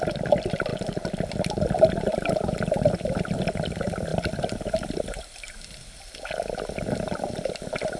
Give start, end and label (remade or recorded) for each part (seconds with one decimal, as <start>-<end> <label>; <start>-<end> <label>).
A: 0.0-8.0 recorded